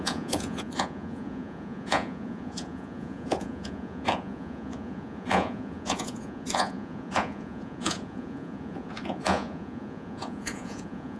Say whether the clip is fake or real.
fake